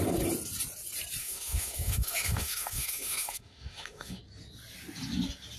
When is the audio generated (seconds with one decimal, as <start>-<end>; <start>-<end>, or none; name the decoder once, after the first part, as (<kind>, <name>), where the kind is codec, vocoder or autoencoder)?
1.2-4.2 (autoencoder, DAC-VAE)